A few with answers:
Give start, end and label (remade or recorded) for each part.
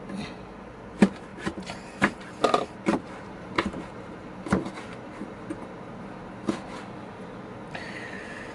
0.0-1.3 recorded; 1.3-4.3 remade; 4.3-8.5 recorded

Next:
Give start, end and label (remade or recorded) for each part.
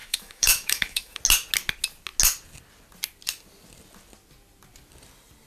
0.0-1.2 remade; 1.2-5.5 recorded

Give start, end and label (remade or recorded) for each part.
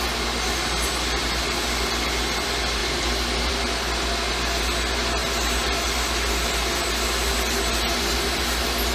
0.0-8.9 recorded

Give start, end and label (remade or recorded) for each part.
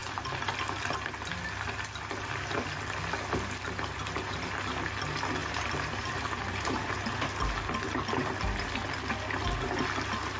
0.0-5.4 recorded; 5.4-6.9 remade; 6.9-10.4 recorded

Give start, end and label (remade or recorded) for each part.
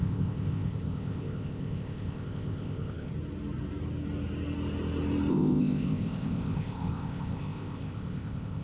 0.0-3.1 remade; 3.1-5.3 recorded; 5.3-8.6 remade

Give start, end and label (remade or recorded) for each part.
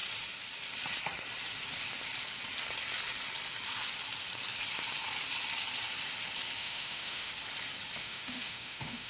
0.0-6.6 recorded; 6.6-7.3 remade; 7.3-8.0 recorded; 8.0-9.1 remade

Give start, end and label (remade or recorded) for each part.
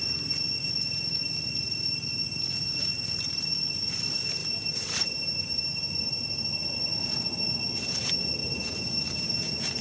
0.0-4.4 recorded; 4.4-5.8 remade; 5.8-8.4 recorded; 8.4-9.8 remade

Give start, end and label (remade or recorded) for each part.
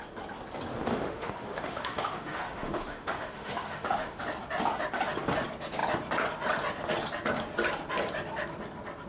0.0-0.9 recorded; 0.9-4.2 remade; 4.2-9.1 recorded